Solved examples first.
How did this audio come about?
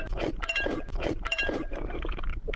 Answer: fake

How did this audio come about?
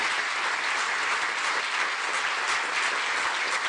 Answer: real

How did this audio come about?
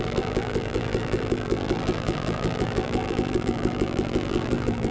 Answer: fake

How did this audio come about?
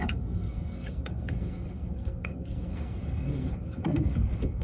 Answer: fake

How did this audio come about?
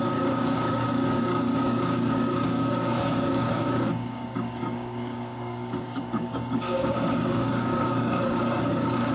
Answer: fake